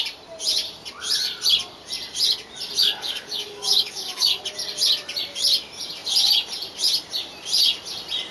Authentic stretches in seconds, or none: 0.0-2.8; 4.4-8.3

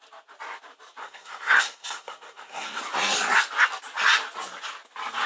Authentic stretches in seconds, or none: 0.0-1.0; 2.8-5.3